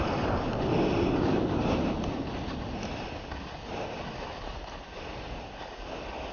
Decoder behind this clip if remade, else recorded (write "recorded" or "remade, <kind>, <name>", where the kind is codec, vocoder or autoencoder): recorded